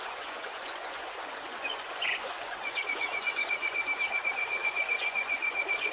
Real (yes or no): no